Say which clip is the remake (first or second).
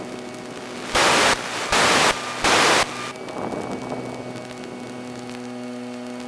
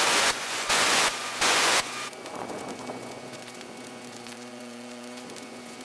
second